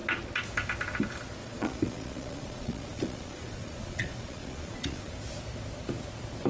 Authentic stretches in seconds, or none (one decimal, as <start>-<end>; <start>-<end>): 0.0-1.4; 5.1-6.5